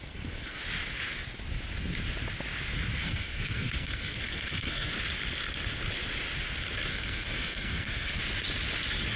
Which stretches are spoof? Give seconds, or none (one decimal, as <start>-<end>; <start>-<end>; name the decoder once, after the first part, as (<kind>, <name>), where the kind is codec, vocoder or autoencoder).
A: 0.0-0.6 (codec, SNAC); 3.0-4.9; 6.9-8.2